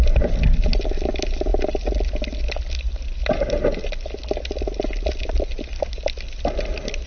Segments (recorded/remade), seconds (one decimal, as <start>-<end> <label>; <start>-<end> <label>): 0.0-7.1 recorded